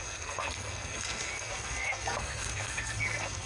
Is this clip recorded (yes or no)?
no